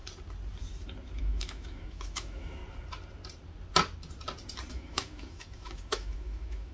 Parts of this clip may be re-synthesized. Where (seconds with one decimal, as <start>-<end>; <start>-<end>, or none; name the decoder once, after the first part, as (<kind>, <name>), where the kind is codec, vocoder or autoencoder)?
1.2-2.6 (autoencoder, DAC-VAE); 4.7-6.7